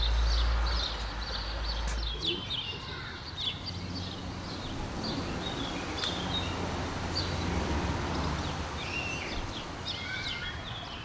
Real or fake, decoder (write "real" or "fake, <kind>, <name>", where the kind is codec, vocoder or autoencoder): real